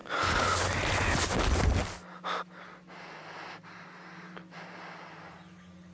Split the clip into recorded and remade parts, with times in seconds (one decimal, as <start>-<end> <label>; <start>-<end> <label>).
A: 0.0-5.9 recorded